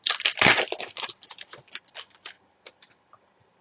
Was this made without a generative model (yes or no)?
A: yes